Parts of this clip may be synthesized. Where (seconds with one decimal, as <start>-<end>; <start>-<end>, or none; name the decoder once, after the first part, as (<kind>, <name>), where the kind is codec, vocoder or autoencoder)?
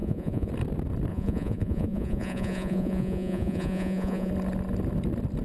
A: 0.0-0.5 (vocoder, Vocos); 1.1-4.3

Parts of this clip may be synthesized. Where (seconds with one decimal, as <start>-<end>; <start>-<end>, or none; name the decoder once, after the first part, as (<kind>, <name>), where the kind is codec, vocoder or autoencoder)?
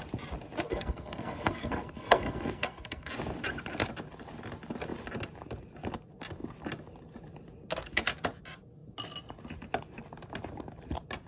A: 0.7-3.1 (codec, SNAC)